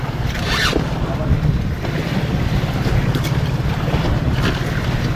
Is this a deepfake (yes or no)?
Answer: yes